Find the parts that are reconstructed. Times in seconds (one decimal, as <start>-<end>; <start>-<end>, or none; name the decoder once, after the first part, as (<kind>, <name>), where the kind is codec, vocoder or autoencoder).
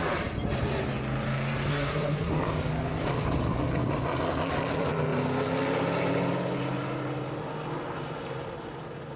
1.7-2.3 (codec, SNAC)